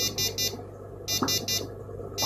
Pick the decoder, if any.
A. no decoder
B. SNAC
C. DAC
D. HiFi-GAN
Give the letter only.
A